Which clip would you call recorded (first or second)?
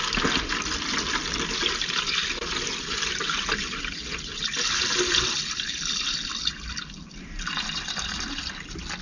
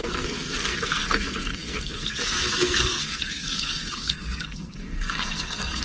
first